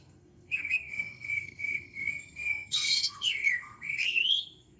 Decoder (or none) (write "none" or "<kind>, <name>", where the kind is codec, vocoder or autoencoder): codec, SNAC